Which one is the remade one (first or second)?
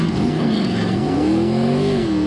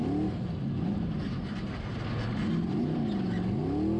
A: first